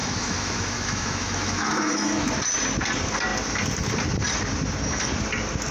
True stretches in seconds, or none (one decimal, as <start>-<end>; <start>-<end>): 2.3-5.7